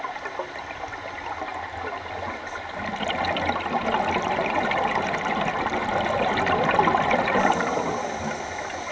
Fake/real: real